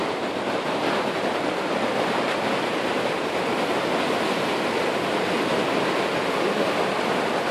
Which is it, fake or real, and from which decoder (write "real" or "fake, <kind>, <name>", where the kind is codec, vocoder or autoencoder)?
real